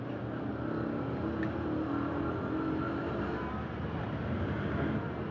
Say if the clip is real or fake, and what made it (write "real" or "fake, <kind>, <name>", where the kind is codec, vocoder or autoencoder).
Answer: real